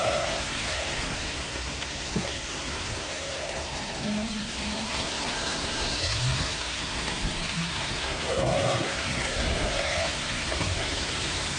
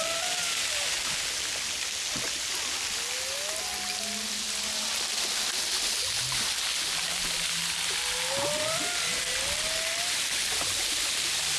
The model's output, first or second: first